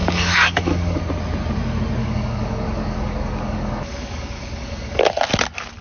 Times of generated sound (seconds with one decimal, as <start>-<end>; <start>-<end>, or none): 0.0-1.0; 2.0-5.1